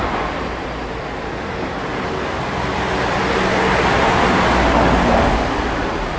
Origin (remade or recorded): recorded